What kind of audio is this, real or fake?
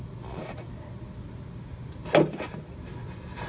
real